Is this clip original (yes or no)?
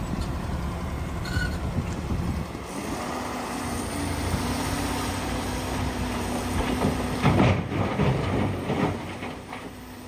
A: yes